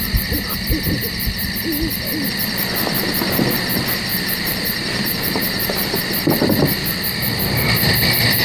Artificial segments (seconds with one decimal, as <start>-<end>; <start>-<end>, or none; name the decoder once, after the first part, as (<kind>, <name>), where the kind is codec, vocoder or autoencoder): 4.1-6.0 (vocoder, BigVGAN v2)